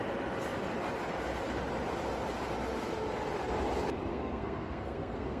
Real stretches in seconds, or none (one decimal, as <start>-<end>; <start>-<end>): 0.0-4.1